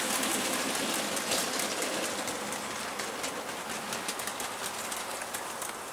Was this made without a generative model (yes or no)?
yes